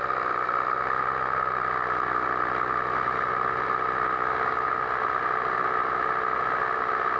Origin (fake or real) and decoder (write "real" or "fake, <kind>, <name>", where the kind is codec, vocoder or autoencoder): real